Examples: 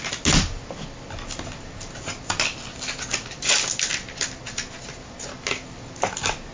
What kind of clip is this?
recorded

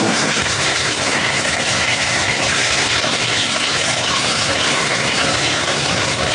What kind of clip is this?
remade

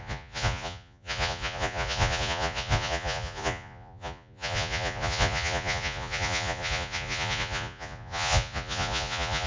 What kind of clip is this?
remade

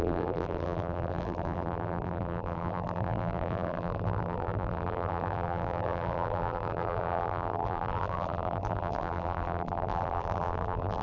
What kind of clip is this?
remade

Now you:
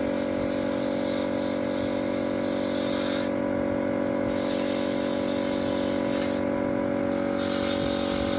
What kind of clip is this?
recorded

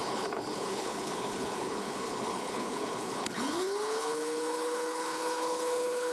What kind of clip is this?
remade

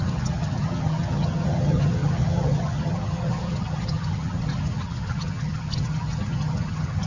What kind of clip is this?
remade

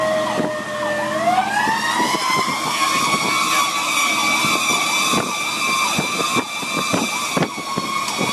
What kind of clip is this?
recorded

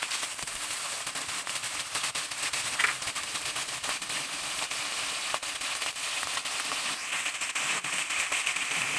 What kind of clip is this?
recorded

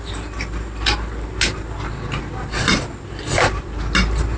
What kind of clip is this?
recorded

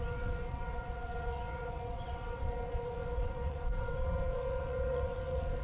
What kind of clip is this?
remade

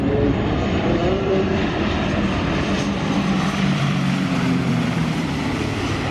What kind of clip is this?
remade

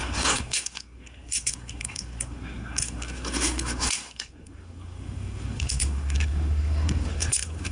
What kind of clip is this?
remade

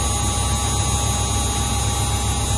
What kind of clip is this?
recorded